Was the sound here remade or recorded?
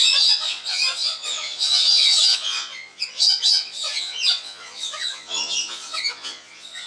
remade